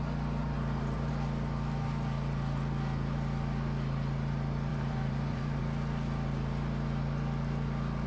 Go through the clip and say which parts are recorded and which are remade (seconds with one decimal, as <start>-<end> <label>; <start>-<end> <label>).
0.0-0.4 recorded; 0.4-1.1 remade; 1.1-4.7 recorded; 4.7-5.6 remade; 5.6-8.1 recorded